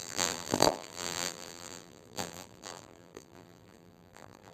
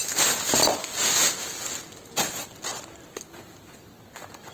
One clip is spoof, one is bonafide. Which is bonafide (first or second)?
second